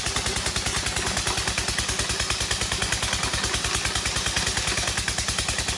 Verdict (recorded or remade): recorded